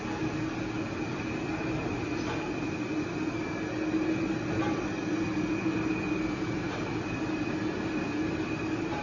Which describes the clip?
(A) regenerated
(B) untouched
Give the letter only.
B